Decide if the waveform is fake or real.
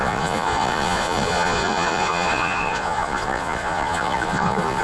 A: fake